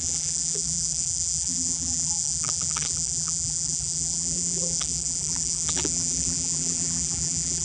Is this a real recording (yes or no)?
no